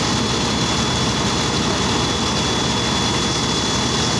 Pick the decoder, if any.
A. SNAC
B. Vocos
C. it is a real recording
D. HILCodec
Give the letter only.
C